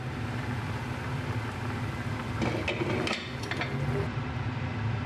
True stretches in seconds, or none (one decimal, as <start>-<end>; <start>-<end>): 0.0-4.0